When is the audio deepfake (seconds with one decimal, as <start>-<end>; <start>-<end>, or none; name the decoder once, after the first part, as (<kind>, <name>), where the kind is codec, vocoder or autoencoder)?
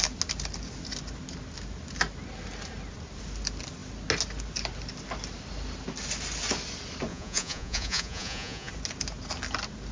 7.1-8.7 (vocoder, Vocos)